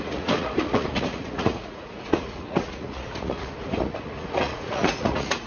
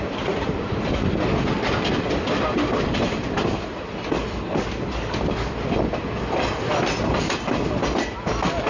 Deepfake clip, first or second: first